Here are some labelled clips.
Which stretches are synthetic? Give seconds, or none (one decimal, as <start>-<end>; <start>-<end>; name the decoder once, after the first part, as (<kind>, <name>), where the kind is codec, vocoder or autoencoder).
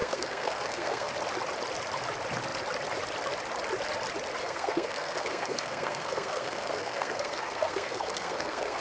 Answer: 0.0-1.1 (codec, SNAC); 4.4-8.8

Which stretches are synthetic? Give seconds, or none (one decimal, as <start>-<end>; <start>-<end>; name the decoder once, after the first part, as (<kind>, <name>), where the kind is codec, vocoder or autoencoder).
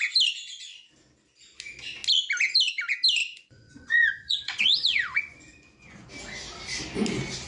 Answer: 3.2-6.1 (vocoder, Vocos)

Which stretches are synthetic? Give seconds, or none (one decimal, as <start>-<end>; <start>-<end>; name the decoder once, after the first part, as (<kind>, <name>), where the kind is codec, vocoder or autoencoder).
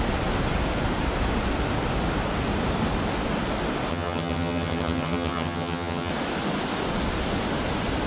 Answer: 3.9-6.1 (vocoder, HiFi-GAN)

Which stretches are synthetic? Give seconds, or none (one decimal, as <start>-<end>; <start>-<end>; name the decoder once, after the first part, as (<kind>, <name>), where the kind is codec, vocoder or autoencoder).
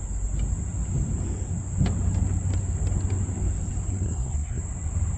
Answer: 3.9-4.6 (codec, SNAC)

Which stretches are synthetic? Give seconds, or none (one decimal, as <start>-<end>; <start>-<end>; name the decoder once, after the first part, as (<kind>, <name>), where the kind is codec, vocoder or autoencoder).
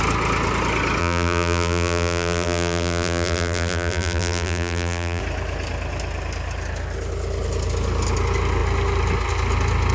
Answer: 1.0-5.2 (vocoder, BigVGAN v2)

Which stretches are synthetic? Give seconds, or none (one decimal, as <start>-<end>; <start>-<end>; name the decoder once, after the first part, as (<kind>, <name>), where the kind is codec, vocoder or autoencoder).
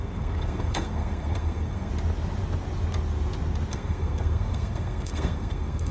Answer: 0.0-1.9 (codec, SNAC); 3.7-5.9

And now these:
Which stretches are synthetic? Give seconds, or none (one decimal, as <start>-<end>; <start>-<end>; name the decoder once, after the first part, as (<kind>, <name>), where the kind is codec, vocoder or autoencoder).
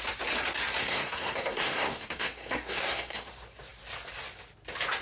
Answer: 0.8-3.3 (codec, SNAC)